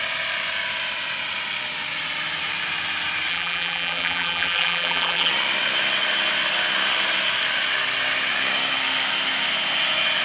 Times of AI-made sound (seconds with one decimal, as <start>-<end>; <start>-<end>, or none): 3.3-5.3